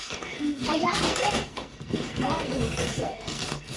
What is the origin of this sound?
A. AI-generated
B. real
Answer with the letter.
A